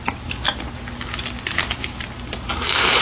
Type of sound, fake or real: real